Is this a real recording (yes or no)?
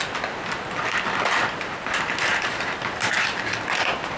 yes